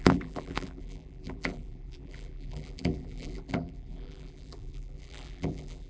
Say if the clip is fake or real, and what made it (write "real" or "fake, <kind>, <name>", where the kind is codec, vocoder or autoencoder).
fake, vocoder, BigVGAN v2